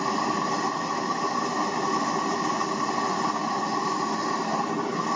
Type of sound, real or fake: real